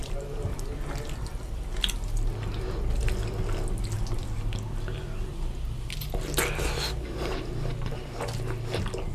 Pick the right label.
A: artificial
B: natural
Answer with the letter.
B